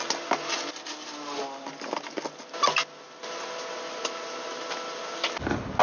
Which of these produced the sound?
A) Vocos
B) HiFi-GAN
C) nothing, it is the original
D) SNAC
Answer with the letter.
C